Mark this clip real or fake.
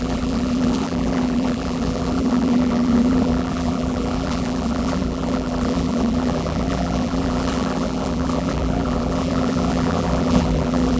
fake